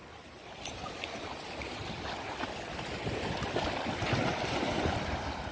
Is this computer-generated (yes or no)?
no